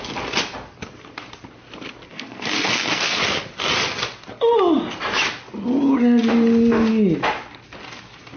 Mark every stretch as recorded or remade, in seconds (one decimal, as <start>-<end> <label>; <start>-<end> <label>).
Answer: 0.0-2.1 recorded; 2.1-3.2 remade; 3.2-8.4 recorded

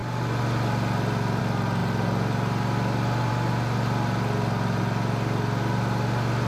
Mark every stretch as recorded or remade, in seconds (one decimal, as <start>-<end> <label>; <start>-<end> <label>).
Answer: 0.0-6.5 recorded

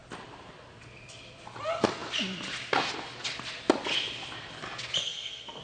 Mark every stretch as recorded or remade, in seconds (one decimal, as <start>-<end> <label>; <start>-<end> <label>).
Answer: 0.0-5.0 recorded; 5.0-5.6 remade

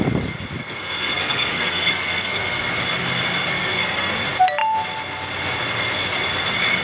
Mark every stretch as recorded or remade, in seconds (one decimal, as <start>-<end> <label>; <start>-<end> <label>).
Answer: 0.0-0.6 recorded; 0.6-2.7 remade; 2.7-3.5 recorded; 3.5-4.1 remade; 4.1-6.8 recorded

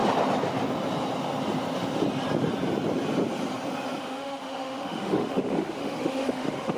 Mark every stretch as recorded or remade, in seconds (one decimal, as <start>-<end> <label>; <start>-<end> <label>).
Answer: 0.0-4.0 recorded; 4.0-6.8 remade

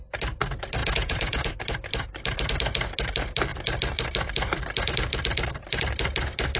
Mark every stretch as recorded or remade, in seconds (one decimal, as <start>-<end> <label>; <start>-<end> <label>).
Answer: 0.0-0.8 recorded; 0.8-1.5 remade; 1.5-6.6 recorded